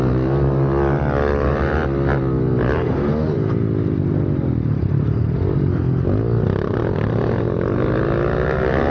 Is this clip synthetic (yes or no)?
no